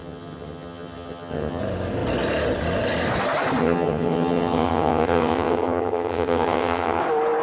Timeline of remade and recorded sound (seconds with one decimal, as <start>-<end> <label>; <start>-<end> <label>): 0.0-1.6 remade; 1.6-3.6 recorded; 3.6-7.0 remade; 7.0-7.4 recorded